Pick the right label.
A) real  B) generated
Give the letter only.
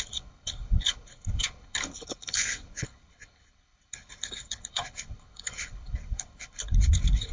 B